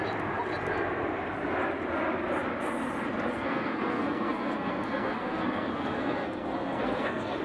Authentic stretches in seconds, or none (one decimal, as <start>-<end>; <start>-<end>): 0.0-3.3